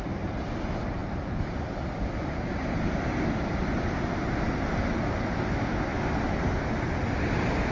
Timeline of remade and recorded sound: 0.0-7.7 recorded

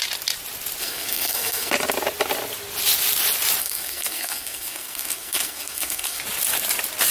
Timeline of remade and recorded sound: 0.0-0.8 recorded; 0.8-1.7 remade; 1.7-3.6 recorded; 3.6-6.2 remade; 6.2-7.1 recorded

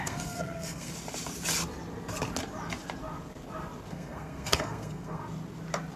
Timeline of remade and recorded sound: 0.0-0.9 remade; 0.9-3.9 recorded; 3.9-5.2 remade; 5.2-6.0 recorded

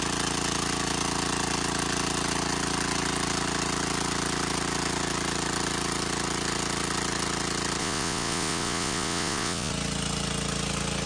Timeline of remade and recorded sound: 0.0-7.8 recorded; 7.8-9.7 remade; 9.7-11.1 recorded

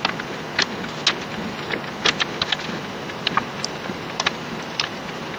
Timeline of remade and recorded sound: 0.0-2.8 recorded; 2.8-5.0 remade; 5.0-5.4 recorded